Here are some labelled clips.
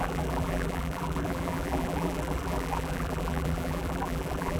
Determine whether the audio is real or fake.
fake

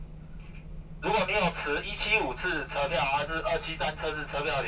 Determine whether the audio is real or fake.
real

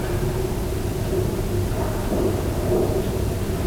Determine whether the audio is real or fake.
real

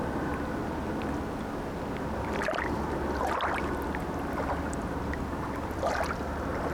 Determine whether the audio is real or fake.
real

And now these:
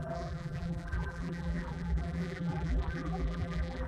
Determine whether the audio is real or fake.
fake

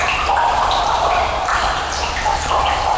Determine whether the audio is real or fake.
fake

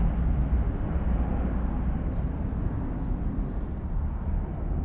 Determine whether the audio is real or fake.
real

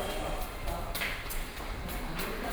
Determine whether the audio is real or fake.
fake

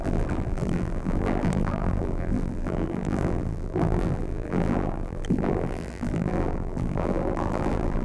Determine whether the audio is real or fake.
fake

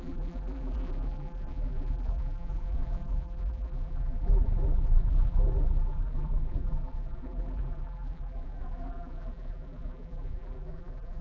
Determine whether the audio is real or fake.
fake